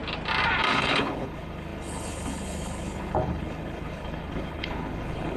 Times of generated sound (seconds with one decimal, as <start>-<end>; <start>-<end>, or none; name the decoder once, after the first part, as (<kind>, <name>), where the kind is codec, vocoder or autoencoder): 0.7-5.4 (codec, HILCodec)